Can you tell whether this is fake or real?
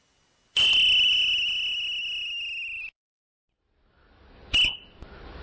real